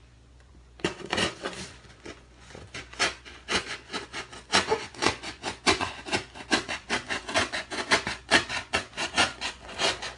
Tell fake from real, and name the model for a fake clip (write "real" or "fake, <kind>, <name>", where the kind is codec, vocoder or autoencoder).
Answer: fake, vocoder, Vocos